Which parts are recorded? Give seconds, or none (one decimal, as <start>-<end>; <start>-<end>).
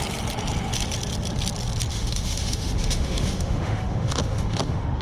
0.0-1.9